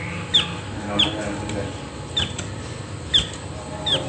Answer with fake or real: real